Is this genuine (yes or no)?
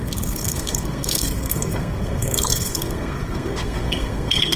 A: no